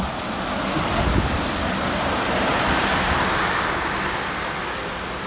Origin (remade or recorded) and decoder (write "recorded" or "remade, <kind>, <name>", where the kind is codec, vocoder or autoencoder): recorded